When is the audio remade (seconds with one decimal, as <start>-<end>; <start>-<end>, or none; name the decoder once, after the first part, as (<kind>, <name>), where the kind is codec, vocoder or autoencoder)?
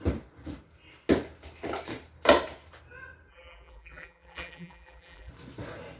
3.3-5.3 (vocoder, BigVGAN v2)